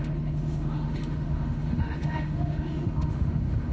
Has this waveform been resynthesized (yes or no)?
yes